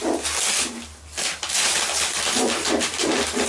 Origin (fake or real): real